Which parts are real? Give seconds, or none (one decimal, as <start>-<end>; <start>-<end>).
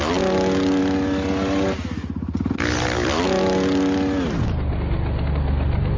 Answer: 0.0-6.0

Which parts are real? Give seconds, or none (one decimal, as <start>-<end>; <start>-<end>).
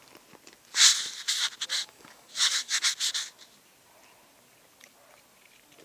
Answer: 0.0-1.7; 2.9-5.8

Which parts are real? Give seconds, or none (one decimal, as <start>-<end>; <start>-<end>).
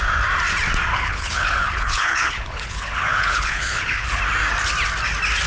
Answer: 0.0-0.9; 4.2-5.5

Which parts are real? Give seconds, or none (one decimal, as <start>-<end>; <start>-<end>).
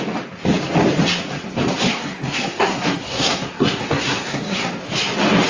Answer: 0.0-1.9; 4.7-5.5